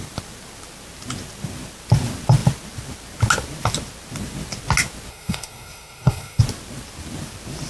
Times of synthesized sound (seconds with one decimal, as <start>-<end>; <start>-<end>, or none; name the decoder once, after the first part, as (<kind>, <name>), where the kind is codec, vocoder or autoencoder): 5.1-6.4 (codec, SNAC)